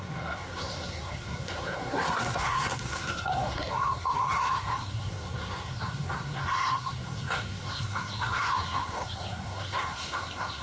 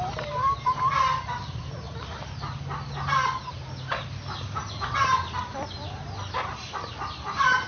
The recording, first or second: second